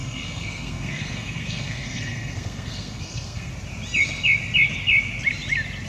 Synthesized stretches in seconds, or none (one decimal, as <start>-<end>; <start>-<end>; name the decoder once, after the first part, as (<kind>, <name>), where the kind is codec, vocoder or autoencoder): 0.0-3.5 (codec, SNAC)

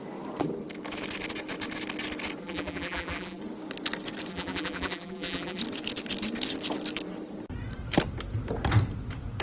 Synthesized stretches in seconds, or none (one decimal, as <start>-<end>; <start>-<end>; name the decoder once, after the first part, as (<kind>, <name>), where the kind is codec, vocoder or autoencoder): 2.4-3.4 (vocoder, BigVGAN v2); 4.3-5.6

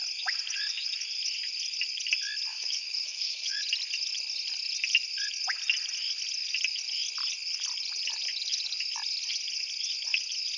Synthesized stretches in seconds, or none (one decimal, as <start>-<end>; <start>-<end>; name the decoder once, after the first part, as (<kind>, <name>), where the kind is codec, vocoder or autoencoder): 2.5-3.6 (autoencoder, DAC-VAE)

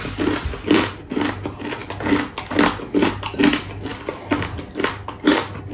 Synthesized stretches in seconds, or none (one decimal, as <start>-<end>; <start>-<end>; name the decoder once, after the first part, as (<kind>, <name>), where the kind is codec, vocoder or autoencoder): none